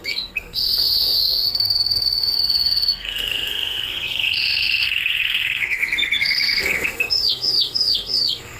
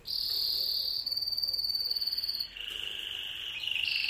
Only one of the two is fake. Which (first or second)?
first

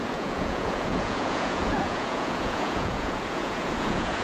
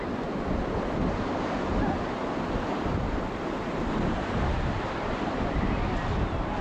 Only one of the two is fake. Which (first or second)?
first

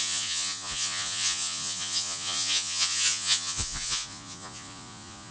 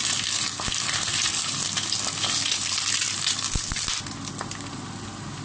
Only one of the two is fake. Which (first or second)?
first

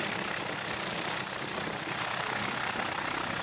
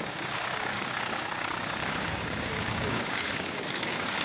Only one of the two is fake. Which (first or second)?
second